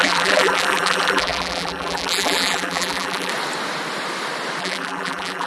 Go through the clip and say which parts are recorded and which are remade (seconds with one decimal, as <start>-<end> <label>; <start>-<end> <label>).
0.0-3.3 remade; 3.3-4.6 recorded; 4.6-5.5 remade